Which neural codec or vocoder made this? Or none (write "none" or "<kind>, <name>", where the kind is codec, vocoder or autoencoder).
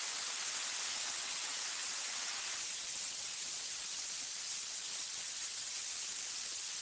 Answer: vocoder, WaveNeXt